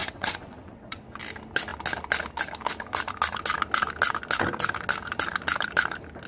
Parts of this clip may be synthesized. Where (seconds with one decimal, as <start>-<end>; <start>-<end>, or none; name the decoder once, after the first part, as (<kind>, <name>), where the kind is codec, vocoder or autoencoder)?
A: 0.0-1.2 (vocoder, WaveNeXt)